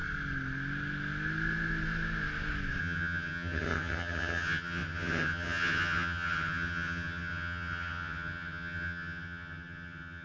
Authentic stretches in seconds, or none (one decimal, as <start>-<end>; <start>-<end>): 0.0-2.8